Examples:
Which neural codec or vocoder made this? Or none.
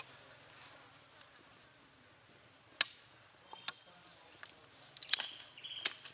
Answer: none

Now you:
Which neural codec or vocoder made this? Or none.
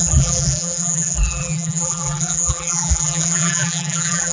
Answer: vocoder, BigVGAN v2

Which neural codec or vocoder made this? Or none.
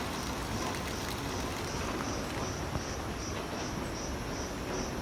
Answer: none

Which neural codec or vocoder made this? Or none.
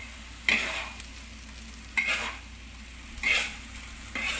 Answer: none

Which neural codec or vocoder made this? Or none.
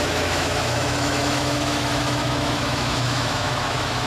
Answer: autoencoder, DAC-VAE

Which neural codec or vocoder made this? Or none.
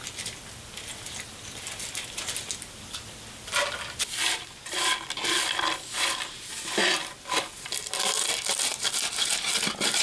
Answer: none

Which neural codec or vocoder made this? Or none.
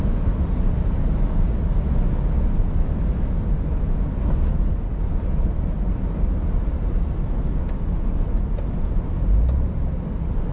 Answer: none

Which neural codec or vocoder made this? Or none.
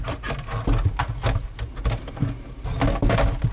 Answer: none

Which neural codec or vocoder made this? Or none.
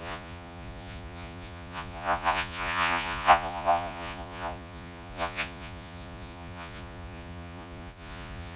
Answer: vocoder, Vocos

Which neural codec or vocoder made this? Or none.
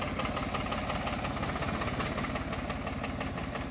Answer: none